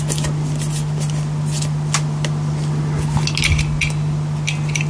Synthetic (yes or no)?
no